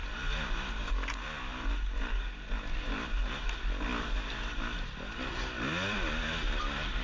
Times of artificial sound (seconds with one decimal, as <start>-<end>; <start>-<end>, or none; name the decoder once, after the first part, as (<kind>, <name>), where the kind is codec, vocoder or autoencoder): none

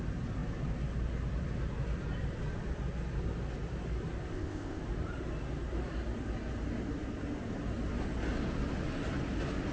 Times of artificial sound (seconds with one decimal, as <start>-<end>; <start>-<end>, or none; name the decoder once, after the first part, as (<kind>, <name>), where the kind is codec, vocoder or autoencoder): 4.3-4.8 (codec, ZipCodec)